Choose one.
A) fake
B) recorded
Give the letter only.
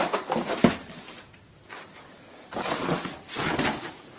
A